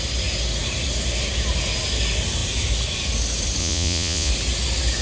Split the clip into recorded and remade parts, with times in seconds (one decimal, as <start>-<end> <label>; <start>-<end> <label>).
0.0-3.6 recorded; 3.6-4.3 remade; 4.3-5.0 recorded